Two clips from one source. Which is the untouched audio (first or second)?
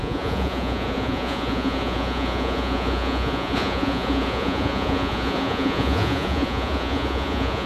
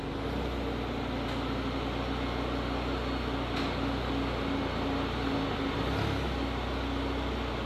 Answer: second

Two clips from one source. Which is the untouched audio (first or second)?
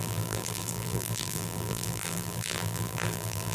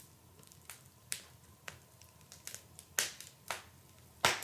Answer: second